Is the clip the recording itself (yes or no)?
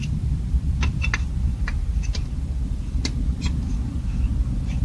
no